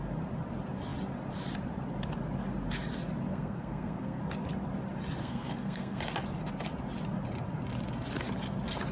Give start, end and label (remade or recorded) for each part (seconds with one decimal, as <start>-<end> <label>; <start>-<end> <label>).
0.0-3.3 recorded; 3.3-4.2 remade; 4.2-5.2 recorded; 5.2-6.0 remade; 6.0-8.9 recorded